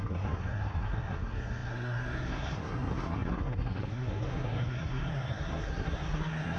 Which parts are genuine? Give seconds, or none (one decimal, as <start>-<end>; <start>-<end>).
none

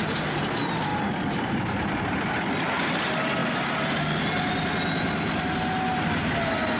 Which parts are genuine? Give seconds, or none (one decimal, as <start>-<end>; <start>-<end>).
0.0-6.8

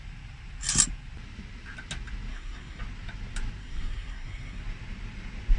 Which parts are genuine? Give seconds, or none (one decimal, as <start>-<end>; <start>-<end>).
0.0-2.3; 2.8-3.6; 4.6-5.6

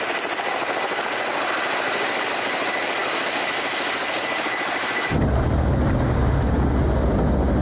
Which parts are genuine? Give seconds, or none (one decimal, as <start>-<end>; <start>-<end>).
0.0-7.6

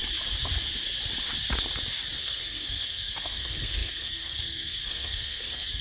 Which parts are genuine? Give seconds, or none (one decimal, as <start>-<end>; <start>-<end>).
0.0-2.2

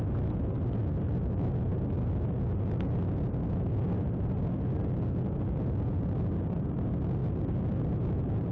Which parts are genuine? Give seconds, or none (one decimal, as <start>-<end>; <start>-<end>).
0.0-8.5